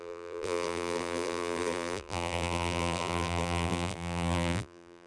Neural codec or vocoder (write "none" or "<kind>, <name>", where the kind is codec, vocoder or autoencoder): vocoder, BigVGAN v2